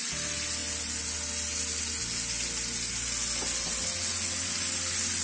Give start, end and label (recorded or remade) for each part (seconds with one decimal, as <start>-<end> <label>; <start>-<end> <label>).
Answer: 0.0-5.2 recorded